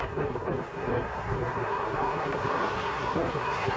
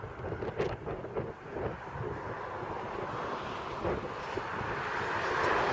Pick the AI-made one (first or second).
first